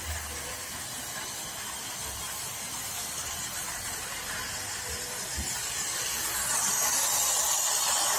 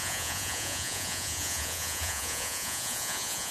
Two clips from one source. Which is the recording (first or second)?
first